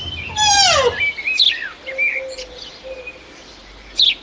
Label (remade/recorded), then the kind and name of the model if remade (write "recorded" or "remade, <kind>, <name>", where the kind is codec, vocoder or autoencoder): recorded